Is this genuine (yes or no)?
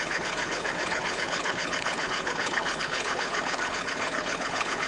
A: no